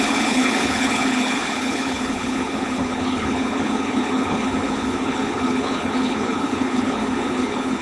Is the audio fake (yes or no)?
yes